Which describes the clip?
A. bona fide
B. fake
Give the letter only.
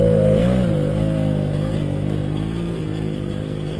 B